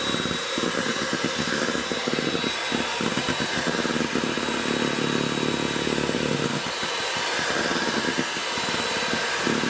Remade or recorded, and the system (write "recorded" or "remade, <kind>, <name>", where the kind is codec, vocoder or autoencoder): recorded